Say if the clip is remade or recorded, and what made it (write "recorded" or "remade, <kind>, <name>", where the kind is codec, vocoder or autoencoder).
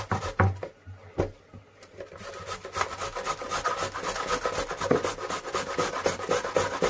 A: recorded